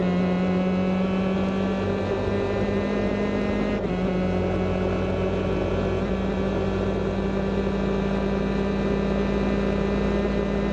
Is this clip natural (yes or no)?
yes